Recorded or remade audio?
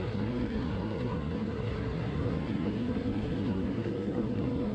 remade